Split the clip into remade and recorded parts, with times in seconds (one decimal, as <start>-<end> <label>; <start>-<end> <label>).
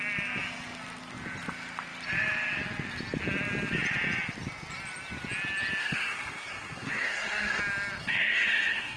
0.0-5.8 recorded; 5.8-7.6 remade; 7.6-8.0 recorded; 8.0-9.0 remade